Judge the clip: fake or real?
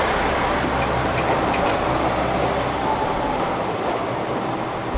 real